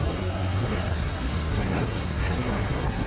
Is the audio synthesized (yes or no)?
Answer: yes